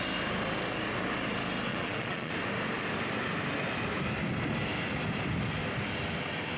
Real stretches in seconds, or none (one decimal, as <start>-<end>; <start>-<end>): 0.0-1.7; 2.3-6.6